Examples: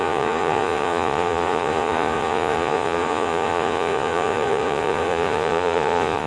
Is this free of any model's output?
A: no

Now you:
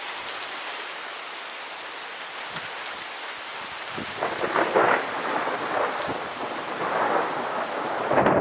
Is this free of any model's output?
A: yes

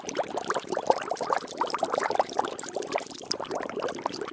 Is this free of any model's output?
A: no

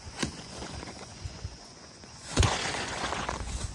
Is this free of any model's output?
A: no